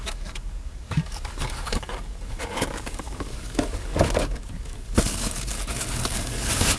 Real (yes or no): no